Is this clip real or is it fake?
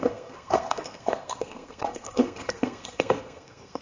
fake